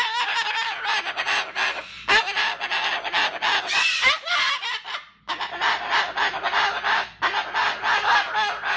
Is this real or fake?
real